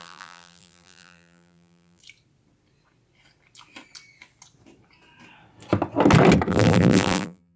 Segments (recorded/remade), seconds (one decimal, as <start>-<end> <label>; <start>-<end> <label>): 0.0-2.0 remade; 2.0-6.5 recorded; 6.5-7.6 remade